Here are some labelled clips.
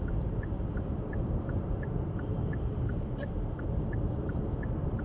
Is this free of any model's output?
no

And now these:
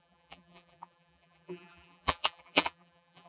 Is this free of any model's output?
no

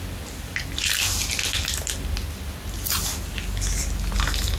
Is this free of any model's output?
yes